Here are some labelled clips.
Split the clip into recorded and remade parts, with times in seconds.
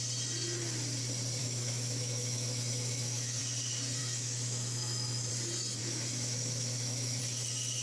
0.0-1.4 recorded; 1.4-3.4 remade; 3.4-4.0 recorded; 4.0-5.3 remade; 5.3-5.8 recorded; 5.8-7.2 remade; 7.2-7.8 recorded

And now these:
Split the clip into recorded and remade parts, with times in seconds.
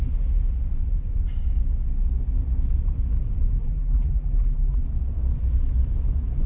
0.0-3.6 recorded; 3.6-4.8 remade; 4.8-6.5 recorded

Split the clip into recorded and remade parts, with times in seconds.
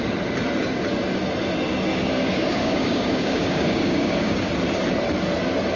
0.0-1.9 recorded; 1.9-4.5 remade; 4.5-5.8 recorded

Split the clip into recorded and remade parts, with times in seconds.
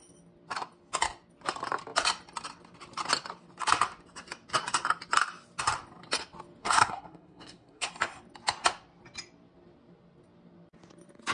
0.0-6.6 recorded; 6.6-7.9 remade; 7.9-11.3 recorded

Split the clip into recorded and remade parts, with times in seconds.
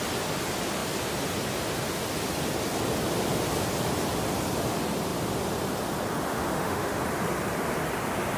0.0-6.3 recorded; 6.3-7.0 remade; 7.0-8.4 recorded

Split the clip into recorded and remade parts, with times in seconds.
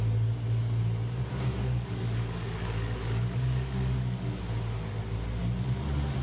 0.0-1.6 recorded; 1.6-4.4 remade; 4.4-6.2 recorded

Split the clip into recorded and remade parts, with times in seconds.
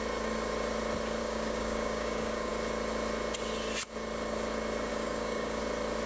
0.0-1.2 recorded; 1.2-2.5 remade; 2.5-4.9 recorded; 4.9-5.6 remade; 5.6-6.1 recorded